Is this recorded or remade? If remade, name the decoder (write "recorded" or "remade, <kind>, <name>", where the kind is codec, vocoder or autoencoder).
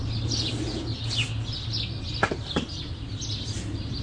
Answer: recorded